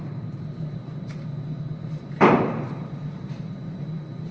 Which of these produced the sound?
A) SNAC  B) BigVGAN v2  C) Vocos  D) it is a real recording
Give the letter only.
B